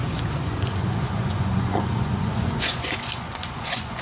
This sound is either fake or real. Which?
fake